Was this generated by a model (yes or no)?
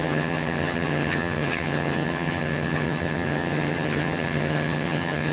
yes